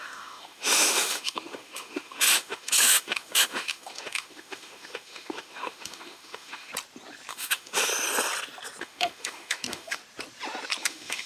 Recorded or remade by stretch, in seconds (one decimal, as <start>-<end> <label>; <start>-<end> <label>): 0.0-6.7 remade; 6.7-7.3 recorded; 7.3-7.9 remade; 7.9-8.8 recorded; 8.8-10.0 remade; 10.0-10.8 recorded; 10.8-11.3 remade